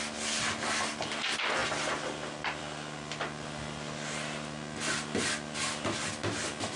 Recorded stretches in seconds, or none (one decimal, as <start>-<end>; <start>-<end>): 0.0-6.8